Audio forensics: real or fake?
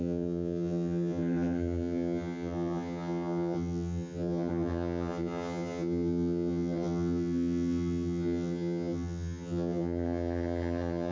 fake